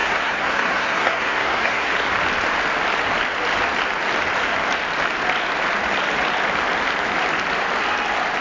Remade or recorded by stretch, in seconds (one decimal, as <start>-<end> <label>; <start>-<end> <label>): 0.0-1.9 remade; 1.9-8.4 recorded